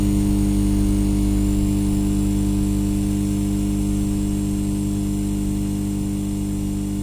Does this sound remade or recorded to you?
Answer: recorded